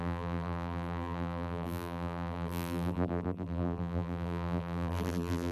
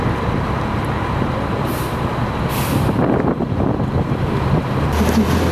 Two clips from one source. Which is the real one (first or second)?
second